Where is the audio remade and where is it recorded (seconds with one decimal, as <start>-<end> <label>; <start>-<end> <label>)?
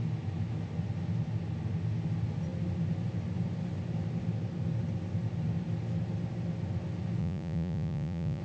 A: 0.0-7.2 recorded; 7.2-8.4 remade